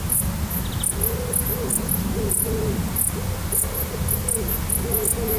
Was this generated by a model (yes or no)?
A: no